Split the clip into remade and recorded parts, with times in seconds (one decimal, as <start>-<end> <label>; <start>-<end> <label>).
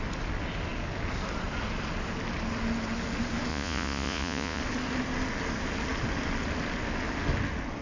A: 0.0-3.5 recorded; 3.5-4.6 remade; 4.6-7.8 recorded